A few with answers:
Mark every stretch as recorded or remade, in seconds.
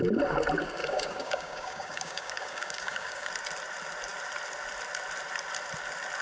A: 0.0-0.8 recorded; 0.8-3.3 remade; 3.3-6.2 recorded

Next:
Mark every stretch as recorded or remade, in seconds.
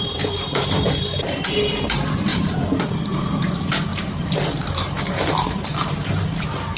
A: 0.0-2.3 remade; 2.3-3.2 recorded; 3.2-6.8 remade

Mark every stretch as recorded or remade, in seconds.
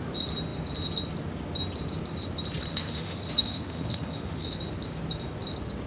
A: 0.0-2.7 recorded; 2.7-4.6 remade; 4.6-5.9 recorded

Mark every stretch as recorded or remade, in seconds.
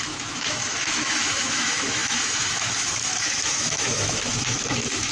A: 0.0-5.1 remade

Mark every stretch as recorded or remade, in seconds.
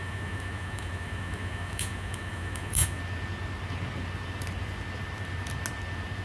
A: 0.0-3.0 remade; 3.0-6.2 recorded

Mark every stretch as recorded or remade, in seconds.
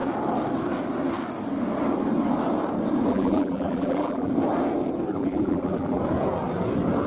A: 0.0-3.1 recorded; 3.1-4.3 remade; 4.3-5.1 recorded; 5.1-6.0 remade; 6.0-7.1 recorded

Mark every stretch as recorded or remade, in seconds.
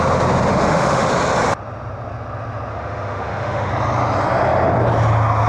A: 0.0-0.5 recorded; 0.5-1.1 remade; 1.1-2.7 recorded; 2.7-3.7 remade; 3.7-5.5 recorded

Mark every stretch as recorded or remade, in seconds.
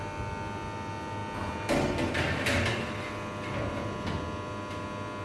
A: 0.0-5.2 recorded